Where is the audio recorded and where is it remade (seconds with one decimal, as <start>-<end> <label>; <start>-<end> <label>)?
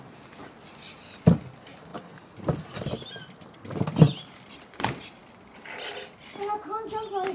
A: 0.0-7.3 recorded